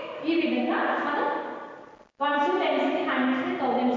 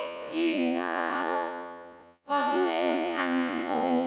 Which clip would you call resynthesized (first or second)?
second